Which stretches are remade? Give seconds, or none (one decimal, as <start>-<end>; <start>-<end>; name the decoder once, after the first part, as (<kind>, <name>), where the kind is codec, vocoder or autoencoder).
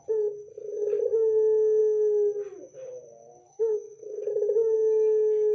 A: 0.5-1.0 (codec, SNAC); 3.4-4.3